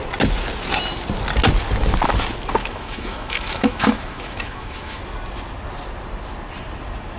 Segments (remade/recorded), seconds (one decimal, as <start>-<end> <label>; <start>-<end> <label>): 0.0-2.6 recorded; 2.6-5.0 remade; 5.0-7.2 recorded